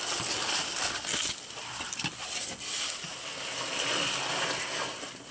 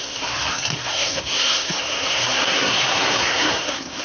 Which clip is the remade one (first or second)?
second